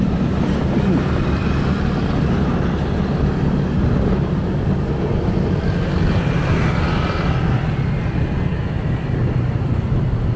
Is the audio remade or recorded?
recorded